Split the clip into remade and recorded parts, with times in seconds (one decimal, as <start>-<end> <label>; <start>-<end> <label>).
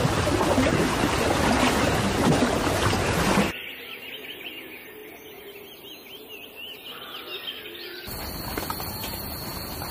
0.0-9.9 recorded